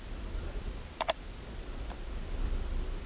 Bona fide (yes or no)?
yes